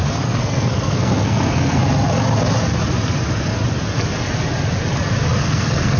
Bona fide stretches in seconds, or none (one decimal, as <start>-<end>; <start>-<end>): 1.8-5.4